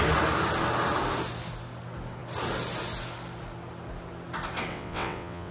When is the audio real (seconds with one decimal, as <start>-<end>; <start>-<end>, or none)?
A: 0.0-4.7